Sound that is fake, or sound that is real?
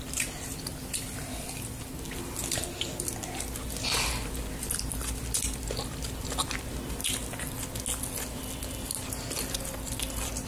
real